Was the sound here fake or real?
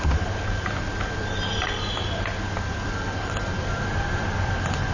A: real